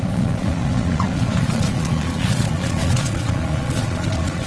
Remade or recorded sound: remade